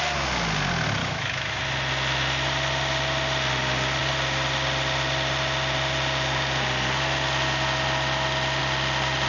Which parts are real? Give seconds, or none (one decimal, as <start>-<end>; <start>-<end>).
0.0-1.0; 1.6-9.3